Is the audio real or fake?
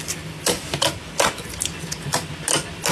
real